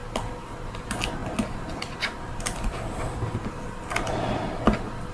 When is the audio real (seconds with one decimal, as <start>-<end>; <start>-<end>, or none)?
0.0-5.1